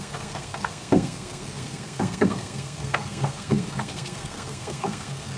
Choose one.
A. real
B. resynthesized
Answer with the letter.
B